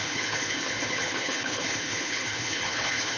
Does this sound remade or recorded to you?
remade